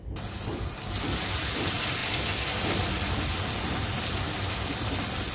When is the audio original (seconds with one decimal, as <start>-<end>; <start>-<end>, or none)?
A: 0.0-5.3